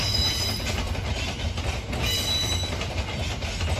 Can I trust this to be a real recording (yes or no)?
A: yes